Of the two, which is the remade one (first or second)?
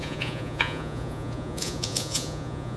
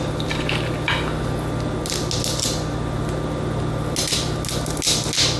first